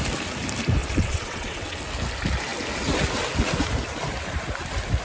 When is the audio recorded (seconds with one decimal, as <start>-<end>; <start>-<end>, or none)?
0.0-0.8; 1.8-5.0